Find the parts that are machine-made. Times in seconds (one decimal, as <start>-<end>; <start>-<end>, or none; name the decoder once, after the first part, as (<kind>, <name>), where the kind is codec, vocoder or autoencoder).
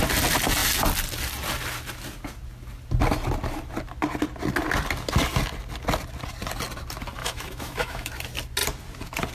7.2-8.1 (autoencoder, DAC-VAE)